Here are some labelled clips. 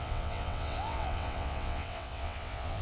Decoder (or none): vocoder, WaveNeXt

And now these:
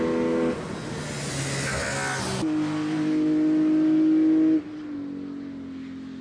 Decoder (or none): none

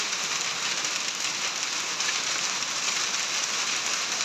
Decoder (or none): none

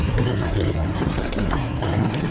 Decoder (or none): codec, SNAC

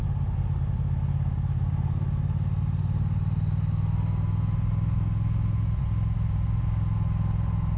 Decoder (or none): none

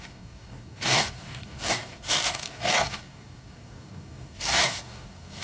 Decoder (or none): codec, DAC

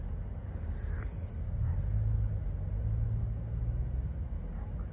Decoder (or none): none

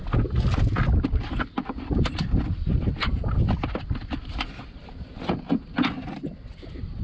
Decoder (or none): none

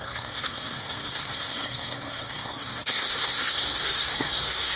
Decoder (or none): codec, SNAC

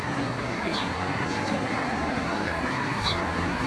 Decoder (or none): codec, SNAC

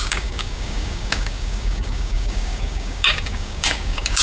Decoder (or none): codec, DAC